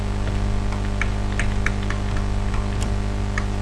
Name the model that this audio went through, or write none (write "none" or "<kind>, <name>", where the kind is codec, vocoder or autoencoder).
none